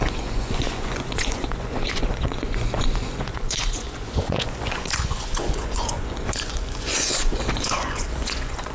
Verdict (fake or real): fake